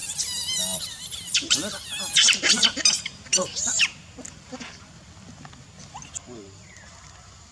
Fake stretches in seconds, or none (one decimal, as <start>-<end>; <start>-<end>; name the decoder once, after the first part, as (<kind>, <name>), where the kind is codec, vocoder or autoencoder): 0.0-1.9 (vocoder, BigVGAN v2); 3.3-4.3